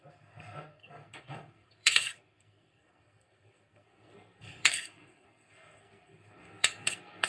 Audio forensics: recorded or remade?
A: remade